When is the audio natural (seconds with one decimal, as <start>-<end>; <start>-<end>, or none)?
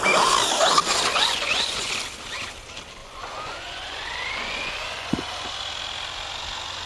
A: 0.0-1.1; 1.9-3.0; 5.6-6.9